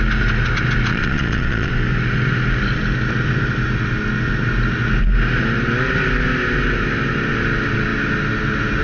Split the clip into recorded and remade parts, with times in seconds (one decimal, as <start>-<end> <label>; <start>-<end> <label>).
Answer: 0.0-0.9 recorded; 0.9-1.7 remade; 1.7-8.8 recorded